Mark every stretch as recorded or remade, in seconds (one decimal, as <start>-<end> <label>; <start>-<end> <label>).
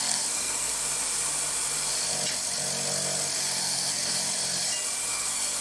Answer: 0.0-0.7 remade; 0.7-3.6 recorded; 3.6-4.1 remade; 4.1-5.1 recorded; 5.1-5.6 remade